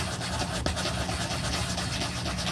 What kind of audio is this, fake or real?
real